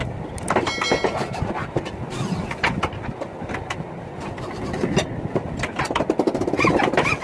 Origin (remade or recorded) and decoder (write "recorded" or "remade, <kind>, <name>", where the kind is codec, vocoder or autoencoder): recorded